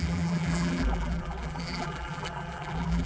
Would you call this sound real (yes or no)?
no